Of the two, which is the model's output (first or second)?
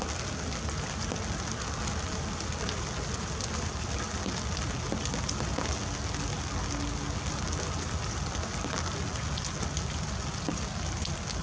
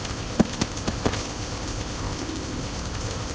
second